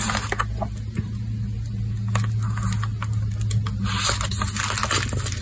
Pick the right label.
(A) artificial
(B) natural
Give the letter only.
B